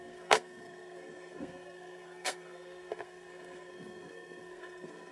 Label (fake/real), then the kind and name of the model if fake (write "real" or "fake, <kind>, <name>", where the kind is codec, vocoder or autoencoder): fake, codec, SNAC